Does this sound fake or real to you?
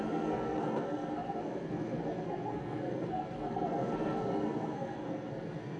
fake